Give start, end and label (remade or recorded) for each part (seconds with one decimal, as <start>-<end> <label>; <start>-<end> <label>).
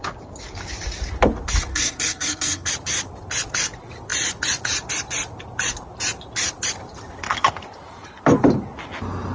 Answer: 0.0-1.7 recorded; 1.7-2.7 remade; 2.7-9.3 recorded